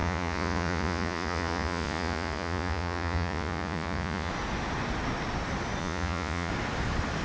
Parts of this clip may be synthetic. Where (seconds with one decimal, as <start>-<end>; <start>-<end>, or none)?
0.0-4.3; 5.8-6.5